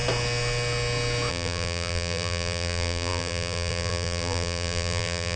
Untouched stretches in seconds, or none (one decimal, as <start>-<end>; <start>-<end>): 0.0-1.3